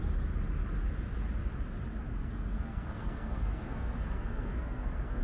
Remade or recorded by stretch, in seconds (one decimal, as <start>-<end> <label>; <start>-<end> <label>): 0.0-2.1 recorded; 2.1-5.2 remade